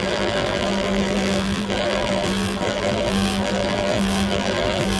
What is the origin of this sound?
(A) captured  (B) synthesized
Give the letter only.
B